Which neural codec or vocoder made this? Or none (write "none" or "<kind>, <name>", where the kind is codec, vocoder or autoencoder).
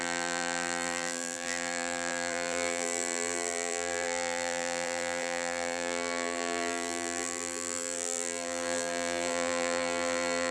vocoder, BigVGAN v2